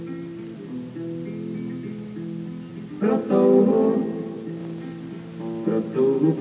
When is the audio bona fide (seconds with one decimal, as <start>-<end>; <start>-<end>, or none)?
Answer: 0.0-6.4